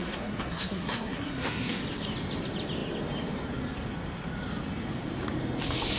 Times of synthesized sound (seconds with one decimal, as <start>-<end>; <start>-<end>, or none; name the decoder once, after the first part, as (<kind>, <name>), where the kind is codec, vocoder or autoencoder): 0.0-1.8 (codec, SNAC)